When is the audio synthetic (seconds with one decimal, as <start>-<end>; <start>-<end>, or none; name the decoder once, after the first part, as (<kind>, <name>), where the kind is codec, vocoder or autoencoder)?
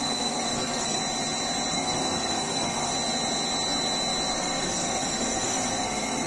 0.0-1.0 (codec, SNAC); 1.7-2.9; 4.3-6.3